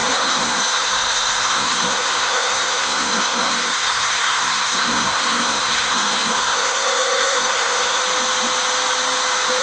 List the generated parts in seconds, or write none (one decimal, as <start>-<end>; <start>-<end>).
0.0-8.0